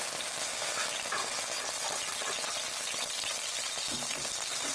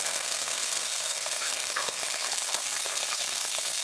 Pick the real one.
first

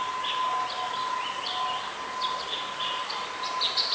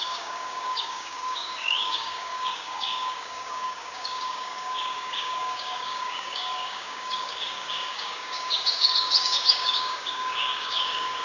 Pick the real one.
first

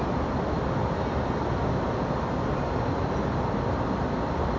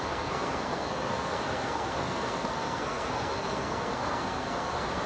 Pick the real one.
first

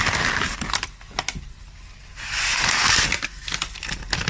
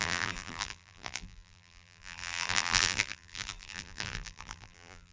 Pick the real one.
first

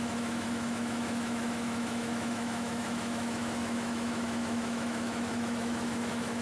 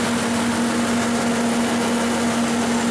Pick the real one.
second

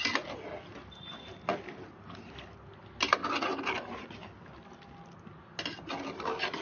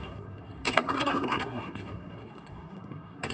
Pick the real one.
first